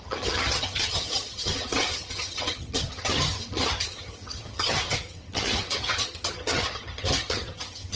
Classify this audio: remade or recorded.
remade